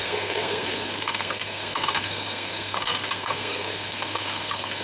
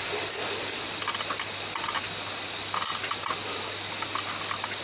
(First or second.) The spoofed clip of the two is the first